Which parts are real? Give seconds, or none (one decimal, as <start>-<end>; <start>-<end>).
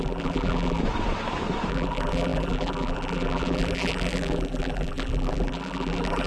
0.8-1.7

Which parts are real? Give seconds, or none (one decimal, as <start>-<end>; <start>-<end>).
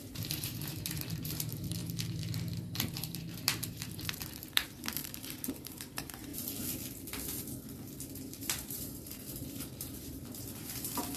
6.3-8.2